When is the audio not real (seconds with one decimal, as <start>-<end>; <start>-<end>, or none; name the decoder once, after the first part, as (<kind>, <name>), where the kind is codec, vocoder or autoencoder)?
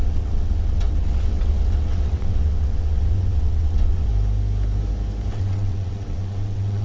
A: 0.0-4.1 (vocoder, WaveNeXt); 5.3-6.8